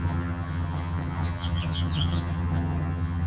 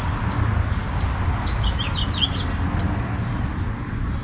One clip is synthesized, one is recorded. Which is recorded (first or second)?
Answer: second